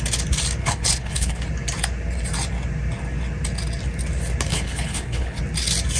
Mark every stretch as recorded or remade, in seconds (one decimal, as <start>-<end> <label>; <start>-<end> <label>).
0.0-0.6 recorded; 0.6-1.4 remade; 1.4-4.5 recorded; 4.5-5.4 remade; 5.4-6.0 recorded